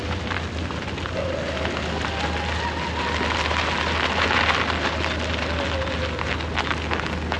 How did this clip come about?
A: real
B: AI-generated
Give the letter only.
A